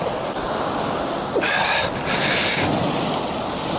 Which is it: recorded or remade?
recorded